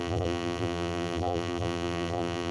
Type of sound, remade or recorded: remade